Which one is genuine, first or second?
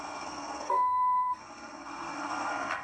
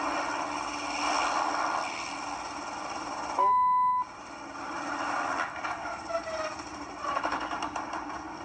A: second